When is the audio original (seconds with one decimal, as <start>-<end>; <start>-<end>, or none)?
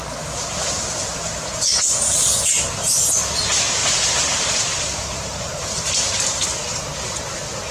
0.0-3.8; 5.9-7.7